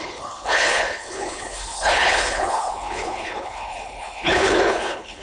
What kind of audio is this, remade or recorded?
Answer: remade